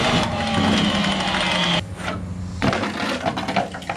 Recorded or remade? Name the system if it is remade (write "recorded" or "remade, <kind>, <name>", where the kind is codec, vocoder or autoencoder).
recorded